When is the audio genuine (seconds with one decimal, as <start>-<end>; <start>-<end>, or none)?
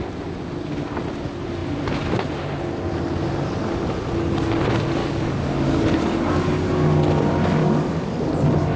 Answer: 0.0-5.0; 6.3-7.6; 8.2-8.8